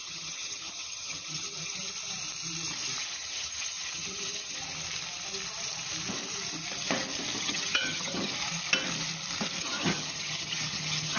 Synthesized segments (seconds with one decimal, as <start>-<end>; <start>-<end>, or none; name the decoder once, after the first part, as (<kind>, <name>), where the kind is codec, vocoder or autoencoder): 0.0-1.8 (vocoder, HiFi-GAN); 3.0-4.6; 7.4-8.3; 9.6-11.2